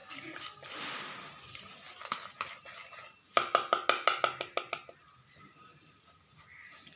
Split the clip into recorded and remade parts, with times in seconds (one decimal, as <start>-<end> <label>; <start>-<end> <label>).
0.0-7.0 recorded